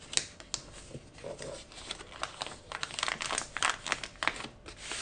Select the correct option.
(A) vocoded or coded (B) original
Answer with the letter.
B